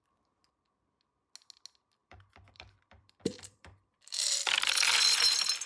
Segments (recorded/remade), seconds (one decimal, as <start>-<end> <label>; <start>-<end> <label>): 0.0-2.0 recorded; 2.0-5.7 remade